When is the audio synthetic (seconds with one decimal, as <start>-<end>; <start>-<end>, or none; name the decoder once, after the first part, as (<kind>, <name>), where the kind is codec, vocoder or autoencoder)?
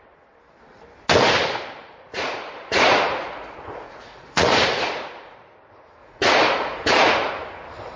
1.8-5.4 (vocoder, Vocos); 6.0-7.3